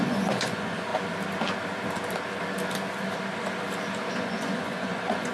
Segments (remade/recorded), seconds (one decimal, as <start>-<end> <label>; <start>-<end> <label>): 0.0-0.9 remade; 0.9-4.1 recorded; 4.1-5.3 remade

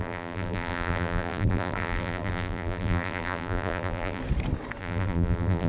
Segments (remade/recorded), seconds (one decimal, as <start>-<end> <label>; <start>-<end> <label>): 0.0-4.2 remade; 4.2-4.8 recorded; 4.8-5.7 remade

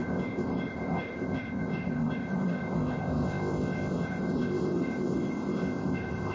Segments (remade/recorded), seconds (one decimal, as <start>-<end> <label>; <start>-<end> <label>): 0.0-6.3 remade

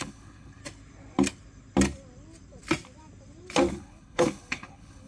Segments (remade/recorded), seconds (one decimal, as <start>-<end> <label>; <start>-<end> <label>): 0.0-0.6 remade; 0.6-3.7 recorded; 3.7-5.1 remade

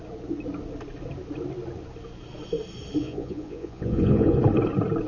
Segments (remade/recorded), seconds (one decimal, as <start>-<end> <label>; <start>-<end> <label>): 0.0-3.0 recorded; 3.0-4.4 remade; 4.4-5.1 recorded

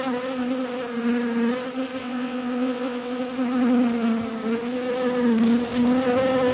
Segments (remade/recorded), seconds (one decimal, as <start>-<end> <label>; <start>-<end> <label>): 0.0-2.0 recorded; 2.0-3.2 remade; 3.2-6.5 recorded